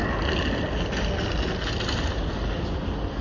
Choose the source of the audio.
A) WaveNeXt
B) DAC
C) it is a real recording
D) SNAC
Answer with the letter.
C